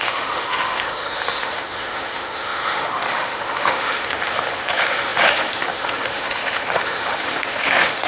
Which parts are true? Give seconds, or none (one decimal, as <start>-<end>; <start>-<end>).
none